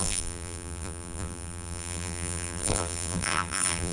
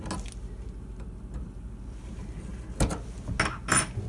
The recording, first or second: second